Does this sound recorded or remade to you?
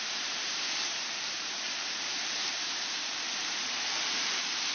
remade